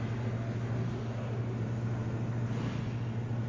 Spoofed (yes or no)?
no